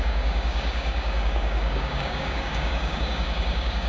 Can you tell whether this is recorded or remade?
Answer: remade